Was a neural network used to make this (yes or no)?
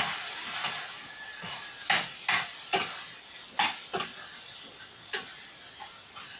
no